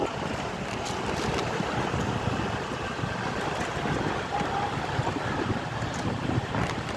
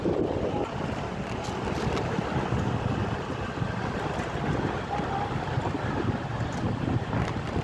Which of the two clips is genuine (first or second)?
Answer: second